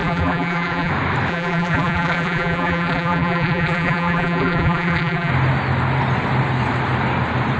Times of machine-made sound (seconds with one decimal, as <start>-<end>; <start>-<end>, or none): 0.0-0.9; 1.3-5.3